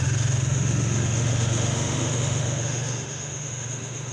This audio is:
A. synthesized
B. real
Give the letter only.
A